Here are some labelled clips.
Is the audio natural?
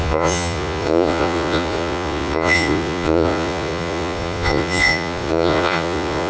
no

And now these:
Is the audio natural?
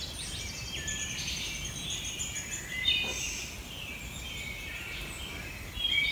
yes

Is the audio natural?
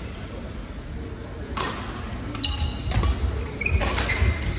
yes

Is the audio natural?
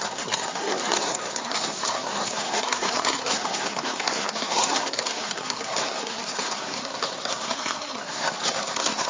no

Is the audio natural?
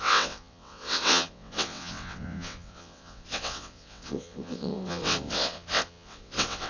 no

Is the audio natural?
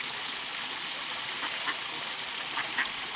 yes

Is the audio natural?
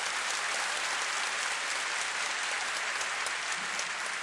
yes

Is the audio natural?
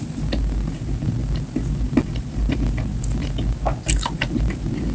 yes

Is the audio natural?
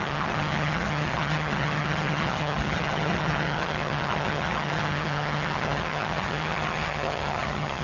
no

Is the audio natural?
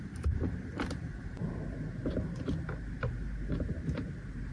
no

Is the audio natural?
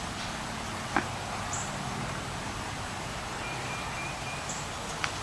yes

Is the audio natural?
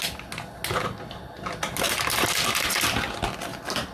yes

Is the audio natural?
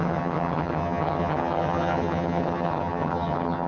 no